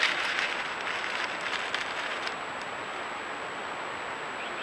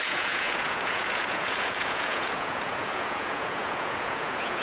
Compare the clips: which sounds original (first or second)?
first